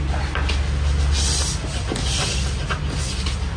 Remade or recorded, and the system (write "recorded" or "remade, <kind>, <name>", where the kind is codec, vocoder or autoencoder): recorded